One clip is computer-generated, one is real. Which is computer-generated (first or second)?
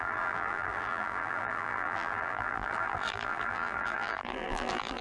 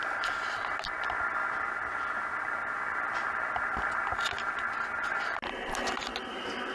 first